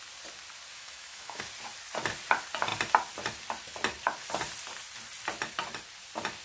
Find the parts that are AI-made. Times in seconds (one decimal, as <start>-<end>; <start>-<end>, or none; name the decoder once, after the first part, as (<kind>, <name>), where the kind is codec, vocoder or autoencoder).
0.7-1.4 (autoencoder, DAC-VAE)